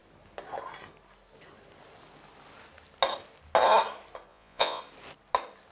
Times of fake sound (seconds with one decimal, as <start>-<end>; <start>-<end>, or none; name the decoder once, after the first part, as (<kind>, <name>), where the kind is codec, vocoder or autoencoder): 4.3-4.8 (vocoder, Vocos)